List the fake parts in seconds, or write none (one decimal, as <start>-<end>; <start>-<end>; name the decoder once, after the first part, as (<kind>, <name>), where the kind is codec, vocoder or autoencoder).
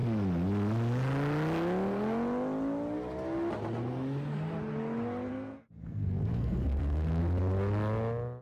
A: 5.3-7.2 (codec, SNAC)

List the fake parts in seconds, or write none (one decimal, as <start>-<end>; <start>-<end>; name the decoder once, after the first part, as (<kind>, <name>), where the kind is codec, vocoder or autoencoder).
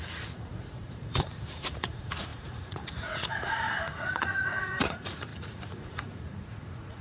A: 0.0-7.0 (vocoder, Vocos)